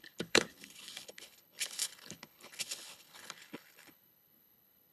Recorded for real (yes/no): no